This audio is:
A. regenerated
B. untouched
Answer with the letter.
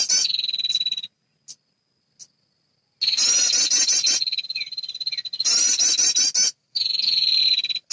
B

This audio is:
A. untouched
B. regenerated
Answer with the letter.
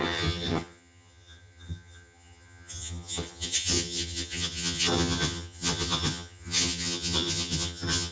B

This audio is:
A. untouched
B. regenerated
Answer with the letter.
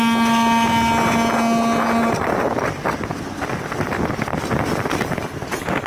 A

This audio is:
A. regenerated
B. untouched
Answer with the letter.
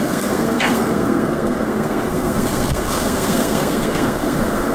A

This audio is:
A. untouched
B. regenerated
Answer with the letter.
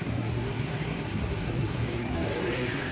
B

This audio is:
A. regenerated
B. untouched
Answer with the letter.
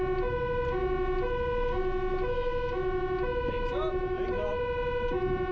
B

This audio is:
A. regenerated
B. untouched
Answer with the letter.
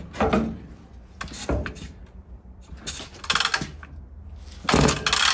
B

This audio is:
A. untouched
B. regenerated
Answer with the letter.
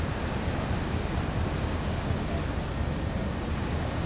A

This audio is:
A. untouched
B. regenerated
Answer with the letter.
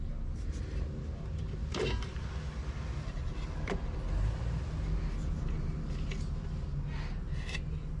A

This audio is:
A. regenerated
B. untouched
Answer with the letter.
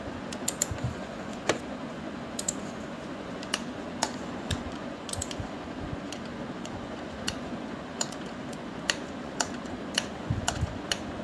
A